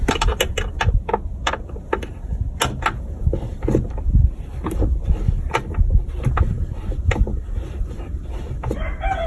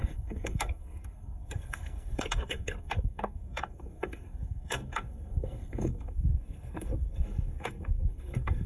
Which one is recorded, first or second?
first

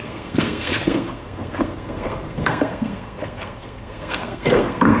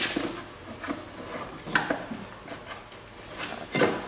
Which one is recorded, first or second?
second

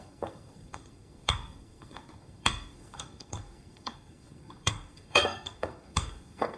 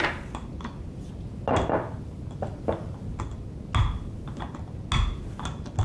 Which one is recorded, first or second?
second